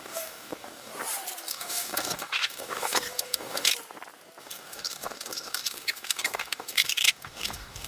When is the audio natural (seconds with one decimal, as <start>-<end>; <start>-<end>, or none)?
0.9-1.5; 3.7-4.4